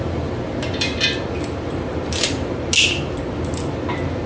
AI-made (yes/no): no